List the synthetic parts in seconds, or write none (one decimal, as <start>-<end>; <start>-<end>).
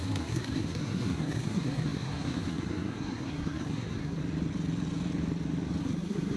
0.0-4.2; 5.8-6.4